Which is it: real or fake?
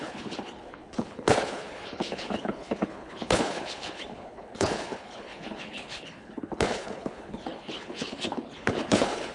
fake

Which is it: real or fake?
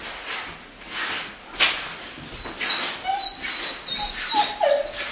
real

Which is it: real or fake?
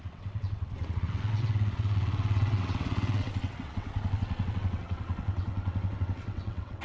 fake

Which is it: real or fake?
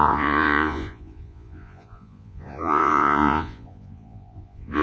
fake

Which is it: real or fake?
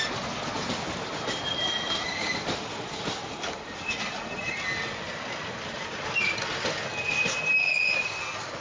real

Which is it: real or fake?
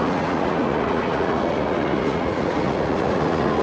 fake